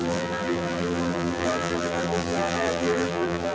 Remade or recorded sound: remade